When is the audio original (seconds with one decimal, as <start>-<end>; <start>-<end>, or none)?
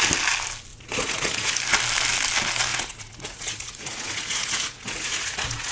0.0-0.7; 1.5-2.7